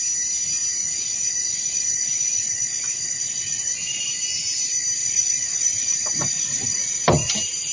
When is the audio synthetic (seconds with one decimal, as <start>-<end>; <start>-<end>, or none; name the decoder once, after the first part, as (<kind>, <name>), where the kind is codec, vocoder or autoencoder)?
0.8-4.1 (vocoder, Vocos); 5.0-7.0